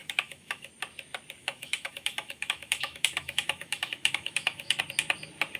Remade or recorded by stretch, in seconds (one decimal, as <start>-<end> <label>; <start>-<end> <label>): 0.0-0.7 remade; 0.7-1.4 recorded; 1.4-4.8 remade; 4.8-5.6 recorded